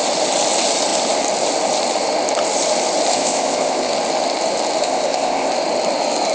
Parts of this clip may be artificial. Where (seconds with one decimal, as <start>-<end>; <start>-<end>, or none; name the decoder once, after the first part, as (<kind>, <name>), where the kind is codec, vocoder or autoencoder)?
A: 3.1-3.9 (codec, ZipCodec); 4.8-5.5